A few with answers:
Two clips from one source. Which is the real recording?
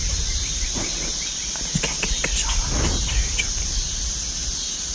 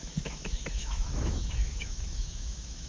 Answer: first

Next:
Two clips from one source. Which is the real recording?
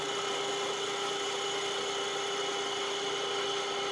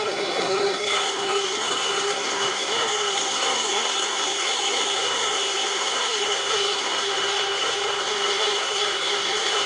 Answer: first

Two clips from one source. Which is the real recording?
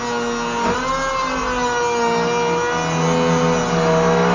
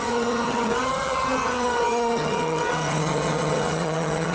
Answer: first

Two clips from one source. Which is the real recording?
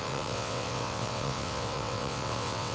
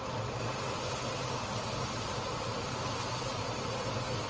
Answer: second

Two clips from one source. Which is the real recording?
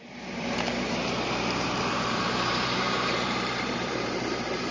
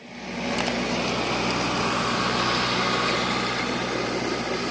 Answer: second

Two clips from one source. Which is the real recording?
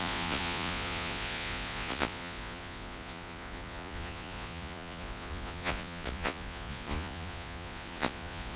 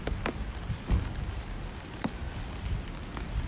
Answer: second